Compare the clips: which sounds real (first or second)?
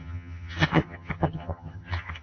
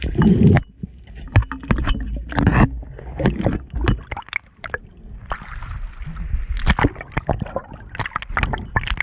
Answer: second